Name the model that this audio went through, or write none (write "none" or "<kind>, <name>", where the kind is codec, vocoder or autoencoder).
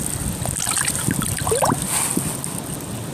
none